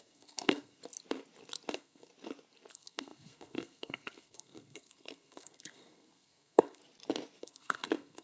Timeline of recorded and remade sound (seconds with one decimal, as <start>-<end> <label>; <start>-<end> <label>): 0.0-0.8 remade; 0.8-1.7 recorded; 1.7-2.1 remade; 2.1-2.7 recorded; 2.7-6.8 remade; 6.8-7.4 recorded; 7.4-8.2 remade